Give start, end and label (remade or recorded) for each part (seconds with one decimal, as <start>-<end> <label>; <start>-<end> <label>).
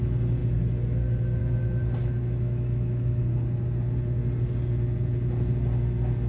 0.0-2.0 recorded; 2.0-3.2 remade; 3.2-6.3 recorded